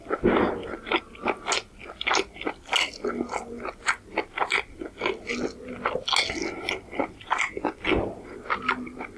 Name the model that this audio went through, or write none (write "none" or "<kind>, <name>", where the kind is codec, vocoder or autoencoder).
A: none